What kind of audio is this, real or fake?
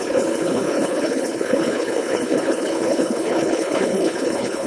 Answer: fake